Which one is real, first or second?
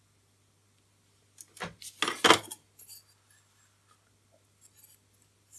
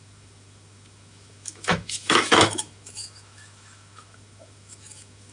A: first